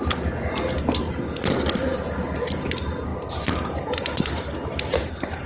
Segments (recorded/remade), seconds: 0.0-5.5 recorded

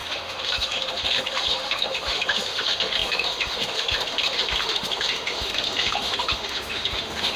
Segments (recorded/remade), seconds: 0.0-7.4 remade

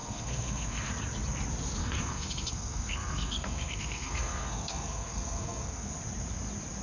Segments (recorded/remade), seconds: 0.0-0.9 remade; 0.9-1.8 recorded; 1.8-5.9 remade; 5.9-6.8 recorded

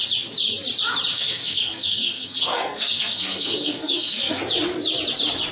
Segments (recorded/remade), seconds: 0.0-1.1 recorded; 1.1-4.4 remade; 4.4-5.5 recorded